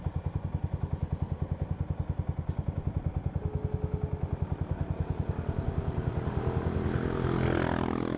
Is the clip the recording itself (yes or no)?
yes